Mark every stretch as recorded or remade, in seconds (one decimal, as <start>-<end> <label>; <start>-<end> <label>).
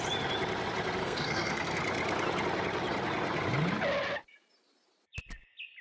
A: 0.0-1.0 recorded; 1.0-1.8 remade; 1.8-5.8 recorded